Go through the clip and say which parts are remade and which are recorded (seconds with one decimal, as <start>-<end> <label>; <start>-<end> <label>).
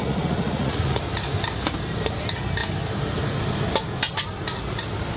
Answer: 0.0-1.0 remade; 1.0-5.2 recorded